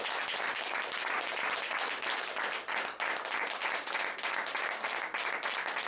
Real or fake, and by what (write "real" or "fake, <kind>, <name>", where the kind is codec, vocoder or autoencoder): real